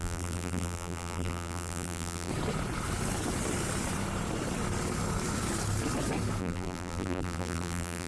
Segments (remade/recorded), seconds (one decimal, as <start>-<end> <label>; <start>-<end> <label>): 0.0-2.3 remade; 2.3-6.4 recorded; 6.4-8.1 remade